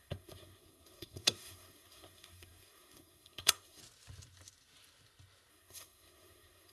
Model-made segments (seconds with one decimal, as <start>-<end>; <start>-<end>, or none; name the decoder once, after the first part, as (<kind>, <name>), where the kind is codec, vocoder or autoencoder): 0.0-3.8 (codec, SNAC); 5.5-6.7